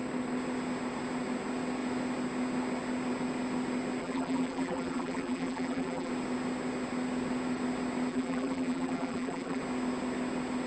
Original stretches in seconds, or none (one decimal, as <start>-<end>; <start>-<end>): 0.0-4.0; 6.1-8.1; 9.6-10.7